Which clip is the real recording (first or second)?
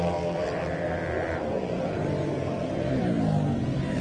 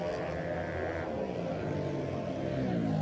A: second